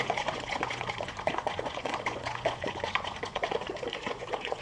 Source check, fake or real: fake